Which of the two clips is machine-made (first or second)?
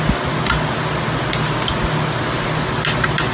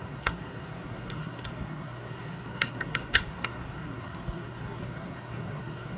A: second